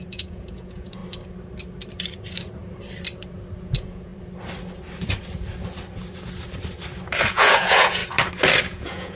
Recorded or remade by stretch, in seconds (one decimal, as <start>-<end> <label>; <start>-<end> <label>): 0.0-1.0 remade; 1.0-3.6 recorded; 3.6-4.1 remade; 4.1-7.3 recorded; 7.3-8.0 remade; 8.0-8.6 recorded; 8.6-9.2 remade